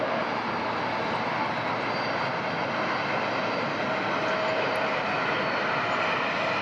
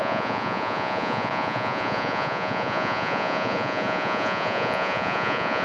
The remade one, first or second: second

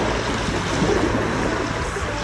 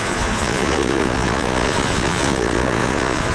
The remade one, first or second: second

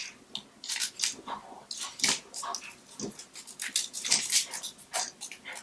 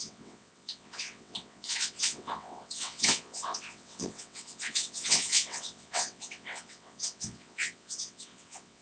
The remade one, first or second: second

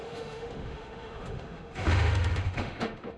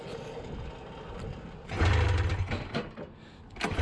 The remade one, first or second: first